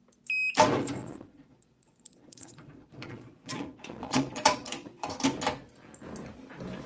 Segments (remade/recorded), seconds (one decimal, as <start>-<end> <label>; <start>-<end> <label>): 0.0-1.0 recorded; 1.0-5.1 remade; 5.1-6.9 recorded